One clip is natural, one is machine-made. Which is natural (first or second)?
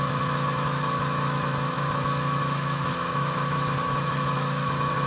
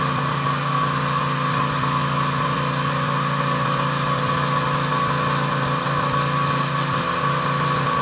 second